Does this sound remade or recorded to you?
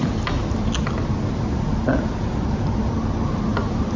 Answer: recorded